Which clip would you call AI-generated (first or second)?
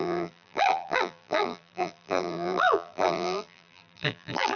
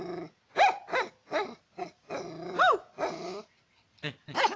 first